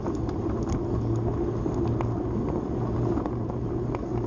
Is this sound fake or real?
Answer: real